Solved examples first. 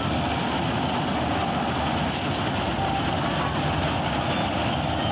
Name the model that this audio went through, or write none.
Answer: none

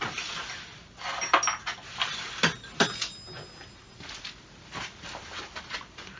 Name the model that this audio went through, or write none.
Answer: none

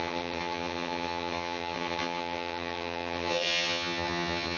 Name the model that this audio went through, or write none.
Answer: vocoder, HiFi-GAN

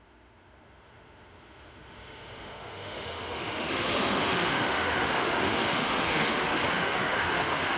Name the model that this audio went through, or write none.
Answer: autoencoder, DAC-VAE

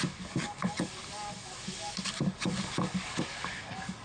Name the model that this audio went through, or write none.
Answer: codec, DAC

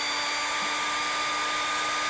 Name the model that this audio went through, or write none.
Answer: none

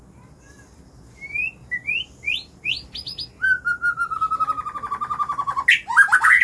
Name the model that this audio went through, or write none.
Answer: none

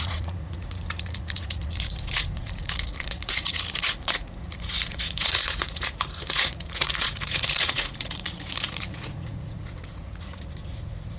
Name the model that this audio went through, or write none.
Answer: vocoder, Vocos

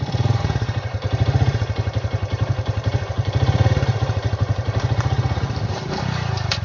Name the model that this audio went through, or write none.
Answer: vocoder, BigVGAN v2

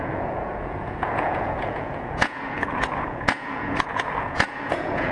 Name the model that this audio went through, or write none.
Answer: vocoder, Vocos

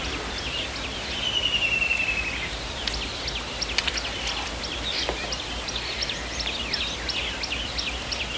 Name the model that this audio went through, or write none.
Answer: none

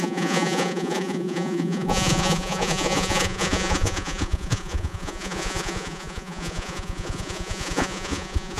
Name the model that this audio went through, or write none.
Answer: vocoder, Vocos